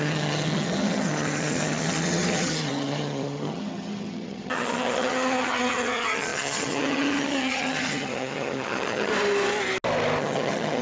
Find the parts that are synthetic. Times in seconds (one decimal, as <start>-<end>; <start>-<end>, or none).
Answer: 0.0-9.1; 10.2-10.8